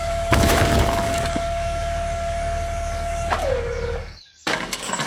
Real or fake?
fake